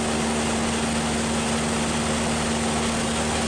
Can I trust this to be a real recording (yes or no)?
yes